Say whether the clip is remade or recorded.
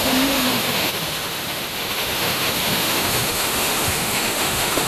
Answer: remade